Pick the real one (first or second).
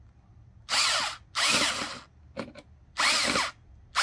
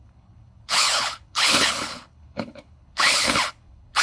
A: first